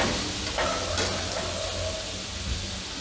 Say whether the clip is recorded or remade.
recorded